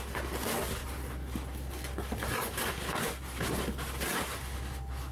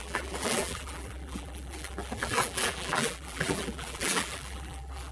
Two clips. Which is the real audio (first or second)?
first